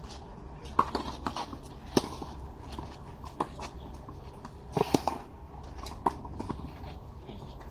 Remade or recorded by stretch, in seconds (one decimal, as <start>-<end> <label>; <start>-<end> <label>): 0.0-4.8 recorded; 4.8-5.5 remade; 5.5-7.7 recorded